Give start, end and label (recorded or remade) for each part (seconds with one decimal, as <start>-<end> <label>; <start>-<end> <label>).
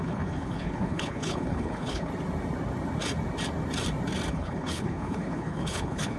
0.0-2.1 remade; 2.1-4.3 recorded; 4.3-6.2 remade